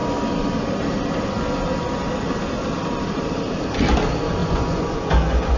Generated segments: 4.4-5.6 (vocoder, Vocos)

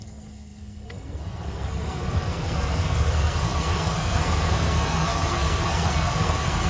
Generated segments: 0.0-6.7 (codec, SNAC)